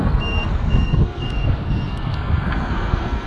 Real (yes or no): no